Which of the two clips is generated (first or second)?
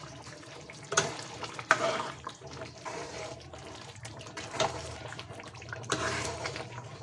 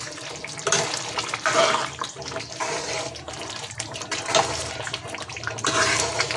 first